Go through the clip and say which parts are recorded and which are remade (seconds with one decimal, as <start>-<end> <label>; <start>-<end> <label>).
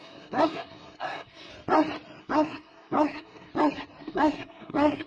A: 0.0-1.5 remade; 1.5-2.2 recorded; 2.2-3.5 remade; 3.5-4.0 recorded; 4.0-5.1 remade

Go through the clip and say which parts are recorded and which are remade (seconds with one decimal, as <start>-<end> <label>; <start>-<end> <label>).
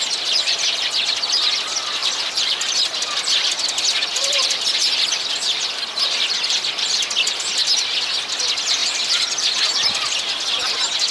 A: 0.0-2.0 recorded; 2.0-2.7 remade; 2.7-8.8 recorded; 8.8-9.6 remade; 9.6-11.1 recorded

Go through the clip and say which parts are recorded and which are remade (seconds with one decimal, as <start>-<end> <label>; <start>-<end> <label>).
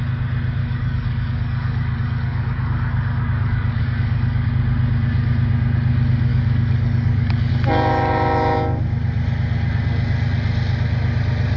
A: 0.0-0.6 recorded; 0.6-4.5 remade; 4.5-6.3 recorded; 6.3-7.5 remade; 7.5-11.6 recorded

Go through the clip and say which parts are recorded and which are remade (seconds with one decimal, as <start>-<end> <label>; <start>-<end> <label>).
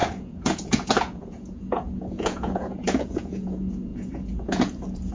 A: 0.0-5.1 remade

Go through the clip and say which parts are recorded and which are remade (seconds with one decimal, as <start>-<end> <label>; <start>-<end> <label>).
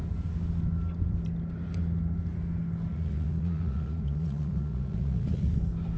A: 0.0-2.9 recorded; 2.9-5.5 remade; 5.5-6.0 recorded